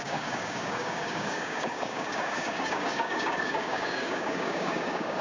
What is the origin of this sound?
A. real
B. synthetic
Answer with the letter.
B